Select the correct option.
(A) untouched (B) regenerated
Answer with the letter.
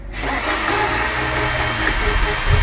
A